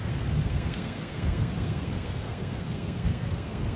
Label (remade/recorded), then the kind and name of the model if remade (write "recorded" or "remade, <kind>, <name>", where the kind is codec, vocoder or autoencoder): remade, codec, SNAC